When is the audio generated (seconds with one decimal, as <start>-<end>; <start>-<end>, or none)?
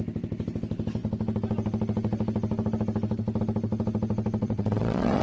4.4-5.2